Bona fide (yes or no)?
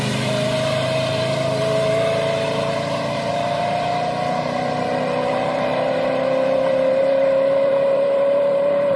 no